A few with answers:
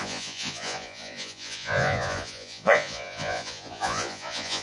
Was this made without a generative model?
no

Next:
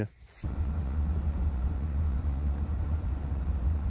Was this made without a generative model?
no